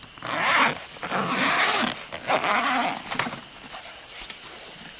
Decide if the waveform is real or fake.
real